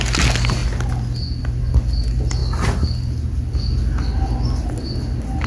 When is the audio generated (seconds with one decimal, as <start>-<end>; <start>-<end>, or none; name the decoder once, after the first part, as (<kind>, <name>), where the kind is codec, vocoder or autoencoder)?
none